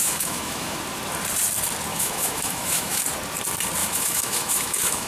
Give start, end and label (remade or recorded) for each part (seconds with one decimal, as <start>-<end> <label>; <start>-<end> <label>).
0.0-0.8 remade; 0.8-1.9 recorded; 1.9-3.0 remade; 3.0-3.8 recorded; 3.8-5.1 remade